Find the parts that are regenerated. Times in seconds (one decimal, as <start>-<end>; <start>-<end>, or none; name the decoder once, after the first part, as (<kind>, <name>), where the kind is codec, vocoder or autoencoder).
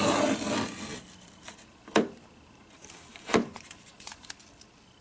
3.1-4.2 (vocoder, Vocos)